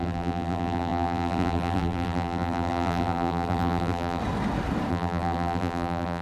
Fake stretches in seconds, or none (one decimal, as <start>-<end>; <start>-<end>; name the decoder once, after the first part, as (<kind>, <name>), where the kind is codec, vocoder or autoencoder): 0.0-4.2 (vocoder, BigVGAN v2); 4.9-6.2